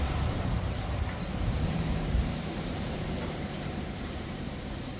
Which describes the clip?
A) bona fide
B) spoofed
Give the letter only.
B